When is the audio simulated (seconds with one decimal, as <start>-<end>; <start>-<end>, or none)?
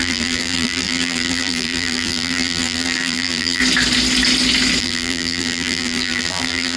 0.0-3.6; 4.8-6.8